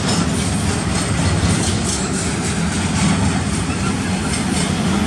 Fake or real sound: real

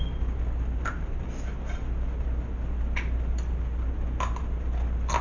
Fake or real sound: real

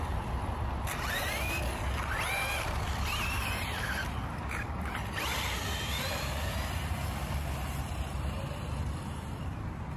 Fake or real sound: real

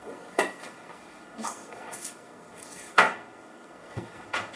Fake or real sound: fake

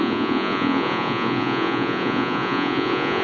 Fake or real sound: fake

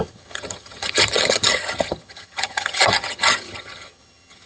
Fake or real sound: fake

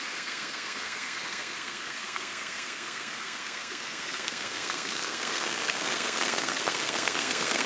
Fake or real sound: fake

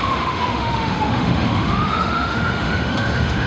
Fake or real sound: fake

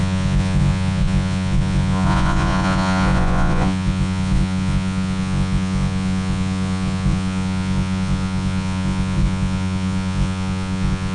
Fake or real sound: fake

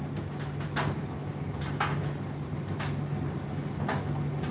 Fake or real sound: real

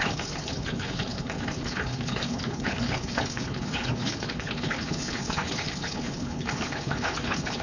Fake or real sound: fake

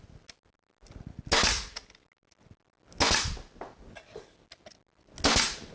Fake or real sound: real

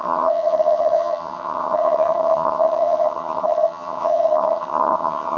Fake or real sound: fake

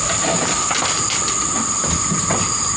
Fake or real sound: real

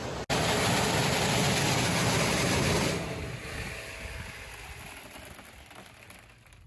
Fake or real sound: real